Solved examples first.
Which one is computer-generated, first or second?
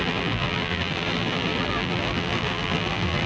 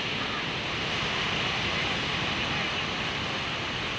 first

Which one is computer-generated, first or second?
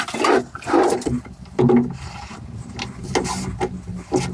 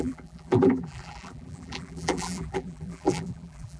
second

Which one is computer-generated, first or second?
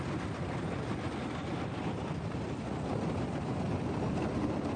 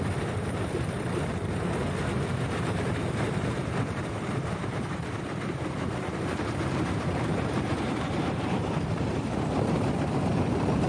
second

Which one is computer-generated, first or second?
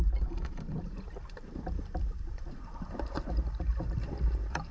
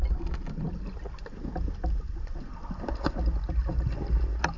first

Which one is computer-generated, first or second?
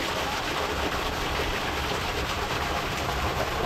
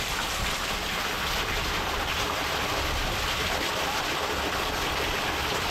first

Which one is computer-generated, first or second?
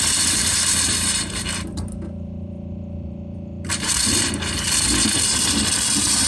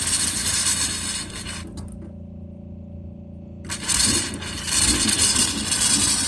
first